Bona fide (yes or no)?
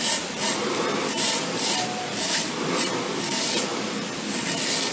yes